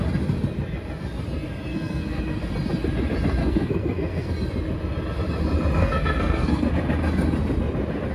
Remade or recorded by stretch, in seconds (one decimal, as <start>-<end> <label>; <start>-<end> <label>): 0.0-1.7 recorded; 1.7-2.2 remade; 2.2-3.4 recorded; 3.4-4.3 remade; 4.3-5.8 recorded; 5.8-6.7 remade; 6.7-8.1 recorded